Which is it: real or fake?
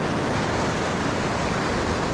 real